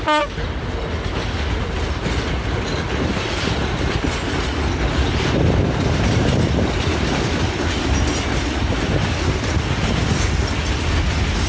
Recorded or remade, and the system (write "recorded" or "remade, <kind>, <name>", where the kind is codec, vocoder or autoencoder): recorded